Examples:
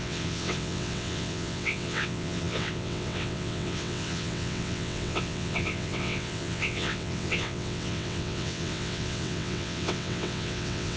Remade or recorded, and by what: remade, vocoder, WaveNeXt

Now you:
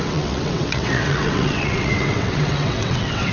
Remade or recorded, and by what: remade, vocoder, WaveNeXt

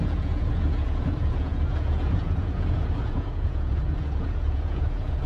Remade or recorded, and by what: remade, vocoder, Vocos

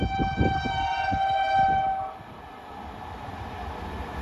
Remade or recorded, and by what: recorded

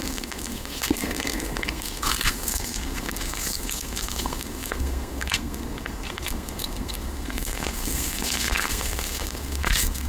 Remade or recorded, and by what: remade, codec, SNAC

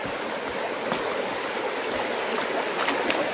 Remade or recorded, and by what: recorded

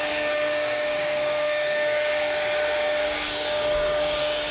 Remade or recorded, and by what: remade, codec, DAC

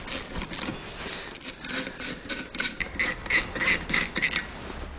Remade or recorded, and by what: recorded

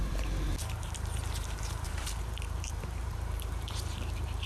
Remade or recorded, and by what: remade, vocoder, BigVGAN v2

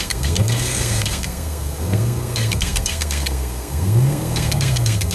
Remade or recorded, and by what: remade, codec, SNAC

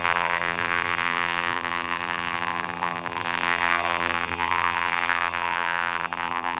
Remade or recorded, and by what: remade, vocoder, BigVGAN v2